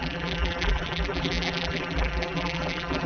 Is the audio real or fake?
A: fake